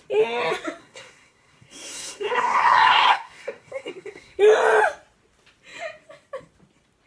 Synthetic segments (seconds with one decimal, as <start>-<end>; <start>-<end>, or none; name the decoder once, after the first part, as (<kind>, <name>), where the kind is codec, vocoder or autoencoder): 0.8-4.4 (codec, SNAC)